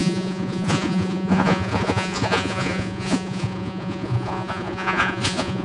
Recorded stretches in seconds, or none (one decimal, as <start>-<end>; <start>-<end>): none